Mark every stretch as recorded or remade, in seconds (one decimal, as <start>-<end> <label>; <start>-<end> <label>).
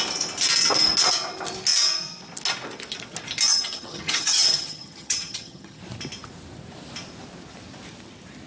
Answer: 0.0-3.5 recorded; 3.5-5.8 remade; 5.8-8.5 recorded